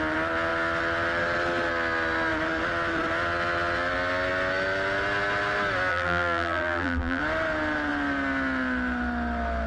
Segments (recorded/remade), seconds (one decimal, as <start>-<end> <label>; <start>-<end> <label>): 0.0-5.9 recorded; 5.9-7.2 remade; 7.2-9.7 recorded